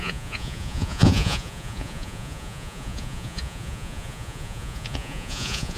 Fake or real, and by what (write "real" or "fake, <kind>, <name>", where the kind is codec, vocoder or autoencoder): fake, vocoder, Vocos